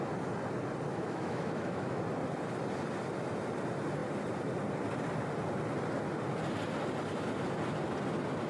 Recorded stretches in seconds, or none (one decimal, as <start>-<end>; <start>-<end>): 0.0-0.9; 2.0-8.5